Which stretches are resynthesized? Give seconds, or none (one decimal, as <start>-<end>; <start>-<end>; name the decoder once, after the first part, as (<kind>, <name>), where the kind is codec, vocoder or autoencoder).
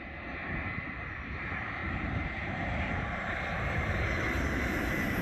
1.8-5.2 (vocoder, BigVGAN v2)